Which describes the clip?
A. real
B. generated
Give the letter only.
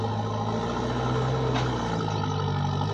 A